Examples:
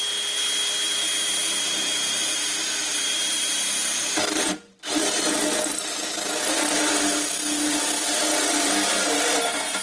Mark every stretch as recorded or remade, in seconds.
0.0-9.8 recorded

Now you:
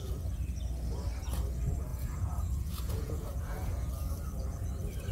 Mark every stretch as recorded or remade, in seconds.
0.0-1.9 recorded; 1.9-3.9 remade; 3.9-5.1 recorded

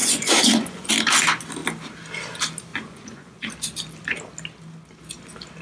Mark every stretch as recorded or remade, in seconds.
0.0-0.9 remade; 0.9-2.7 recorded; 2.7-3.5 remade; 3.5-5.6 recorded

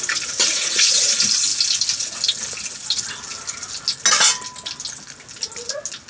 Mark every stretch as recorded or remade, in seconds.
0.0-0.5 recorded; 0.5-1.1 remade; 1.1-6.1 recorded